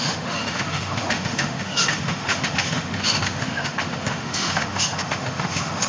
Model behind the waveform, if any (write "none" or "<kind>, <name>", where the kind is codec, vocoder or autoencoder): autoencoder, DAC-VAE